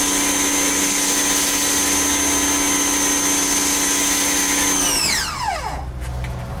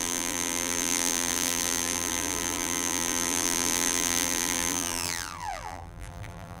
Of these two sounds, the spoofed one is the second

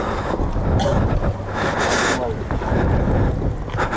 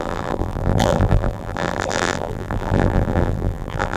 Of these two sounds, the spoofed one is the second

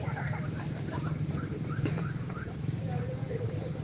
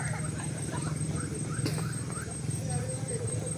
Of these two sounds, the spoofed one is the first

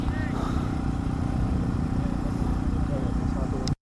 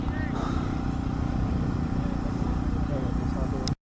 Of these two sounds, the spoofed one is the first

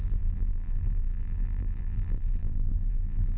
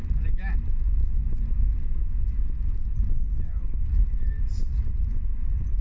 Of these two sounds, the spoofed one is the first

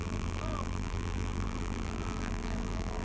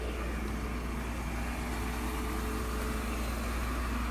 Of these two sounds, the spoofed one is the first